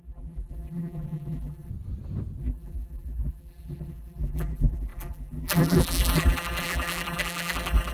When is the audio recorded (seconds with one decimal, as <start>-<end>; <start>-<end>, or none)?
1.7-2.4